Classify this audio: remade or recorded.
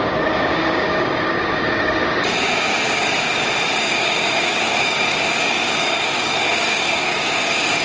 remade